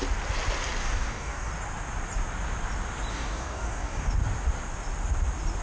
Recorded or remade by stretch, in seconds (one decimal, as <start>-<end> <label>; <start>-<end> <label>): 0.0-0.8 recorded; 0.8-1.5 remade; 1.5-3.1 recorded; 3.1-4.1 remade; 4.1-5.6 recorded

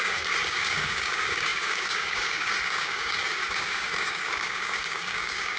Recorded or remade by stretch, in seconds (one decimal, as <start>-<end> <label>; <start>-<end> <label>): 0.0-5.6 remade

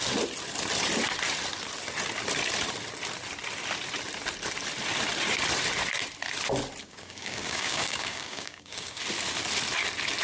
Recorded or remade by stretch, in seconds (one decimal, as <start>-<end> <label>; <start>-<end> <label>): 0.0-6.8 recorded; 6.8-9.0 remade; 9.0-10.2 recorded

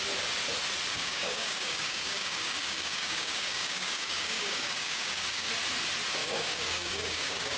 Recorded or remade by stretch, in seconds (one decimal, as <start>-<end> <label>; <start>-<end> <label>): 0.0-0.9 recorded; 0.9-5.5 remade; 5.5-6.2 recorded; 6.2-7.6 remade

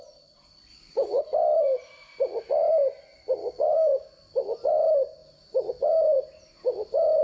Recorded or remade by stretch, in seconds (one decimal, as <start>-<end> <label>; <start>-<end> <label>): 0.0-0.7 recorded; 0.7-1.2 remade; 1.2-3.4 recorded; 3.4-4.1 remade; 4.1-7.2 recorded

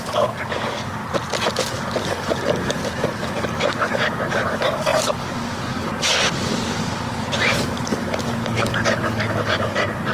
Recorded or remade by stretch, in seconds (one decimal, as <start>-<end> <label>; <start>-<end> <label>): 0.0-1.0 remade; 1.0-1.7 recorded; 1.7-10.1 remade

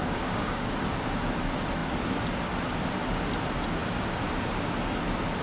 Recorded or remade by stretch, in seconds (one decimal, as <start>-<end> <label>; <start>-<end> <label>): 0.0-0.7 remade; 0.7-5.4 recorded